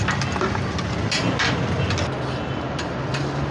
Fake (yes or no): no